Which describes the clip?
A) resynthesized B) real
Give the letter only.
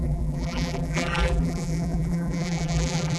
A